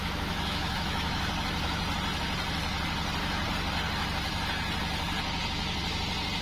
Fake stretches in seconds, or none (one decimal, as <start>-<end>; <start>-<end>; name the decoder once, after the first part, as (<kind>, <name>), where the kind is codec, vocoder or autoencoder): 0.0-1.8 (autoencoder, DAC-VAE)